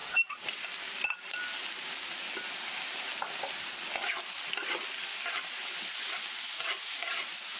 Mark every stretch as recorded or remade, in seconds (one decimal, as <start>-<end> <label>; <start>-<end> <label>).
0.0-7.6 recorded